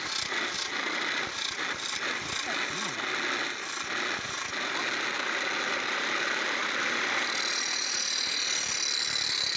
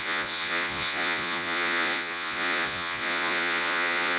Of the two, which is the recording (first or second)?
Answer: first